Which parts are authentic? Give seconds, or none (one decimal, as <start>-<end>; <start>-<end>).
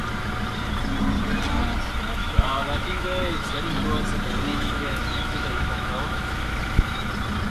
0.0-2.2; 3.6-4.5; 7.1-7.5